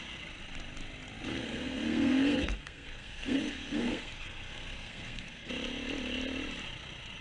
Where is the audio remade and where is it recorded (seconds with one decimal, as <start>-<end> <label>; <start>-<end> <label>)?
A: 0.0-1.3 recorded; 1.3-5.5 remade; 5.5-7.2 recorded